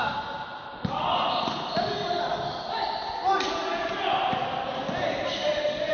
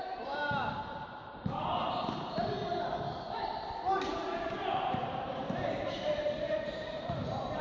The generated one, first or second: second